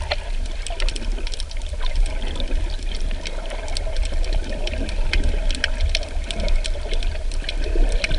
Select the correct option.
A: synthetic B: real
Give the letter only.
B